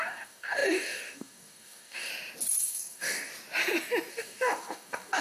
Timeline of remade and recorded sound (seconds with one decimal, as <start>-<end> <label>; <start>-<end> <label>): 0.0-2.1 remade; 2.1-2.6 recorded; 2.6-3.3 remade; 3.3-4.1 recorded; 4.1-5.2 remade